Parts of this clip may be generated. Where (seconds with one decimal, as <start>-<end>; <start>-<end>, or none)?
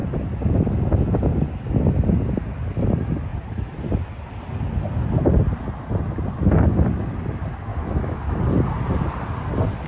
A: 7.7-8.4